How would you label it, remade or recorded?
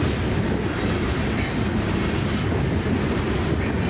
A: recorded